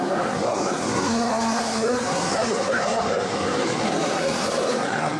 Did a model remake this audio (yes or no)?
yes